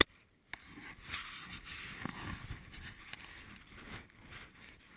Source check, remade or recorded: recorded